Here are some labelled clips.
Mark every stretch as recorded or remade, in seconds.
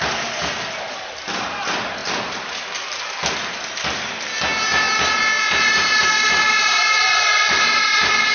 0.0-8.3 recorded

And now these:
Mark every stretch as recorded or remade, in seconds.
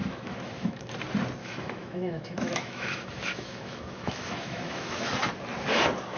0.0-0.9 remade; 0.9-1.4 recorded; 1.4-5.1 remade; 5.1-6.2 recorded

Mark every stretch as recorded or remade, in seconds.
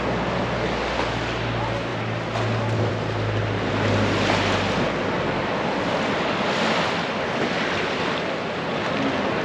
0.0-9.4 recorded